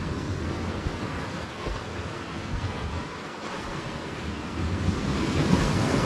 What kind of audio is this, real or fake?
fake